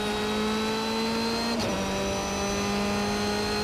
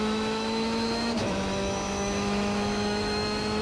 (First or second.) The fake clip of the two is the second